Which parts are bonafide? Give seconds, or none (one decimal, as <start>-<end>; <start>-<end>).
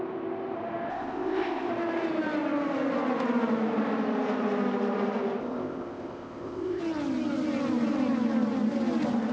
0.0-0.9; 1.7-5.4; 6.8-9.3